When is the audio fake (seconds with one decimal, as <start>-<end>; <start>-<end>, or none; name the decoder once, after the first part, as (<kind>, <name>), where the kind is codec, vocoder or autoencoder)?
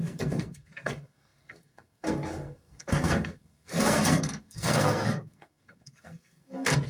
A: 0.0-6.9 (codec, SNAC)